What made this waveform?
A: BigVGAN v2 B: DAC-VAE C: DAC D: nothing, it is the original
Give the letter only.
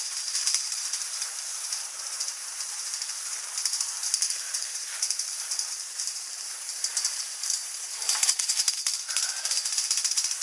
A